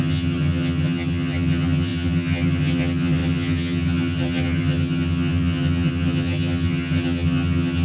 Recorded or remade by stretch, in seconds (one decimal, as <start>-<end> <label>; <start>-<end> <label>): 0.0-7.8 remade